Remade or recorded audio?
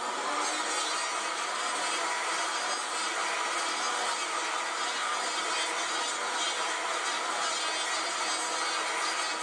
recorded